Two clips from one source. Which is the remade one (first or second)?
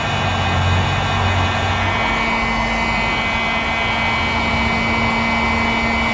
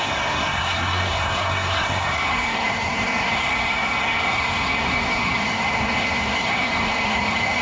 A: second